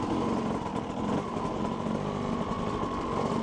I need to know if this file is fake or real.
real